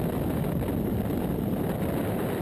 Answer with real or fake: real